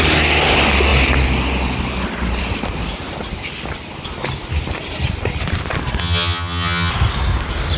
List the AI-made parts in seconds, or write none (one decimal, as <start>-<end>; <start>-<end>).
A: 6.0-6.9